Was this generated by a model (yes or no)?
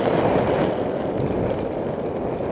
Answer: no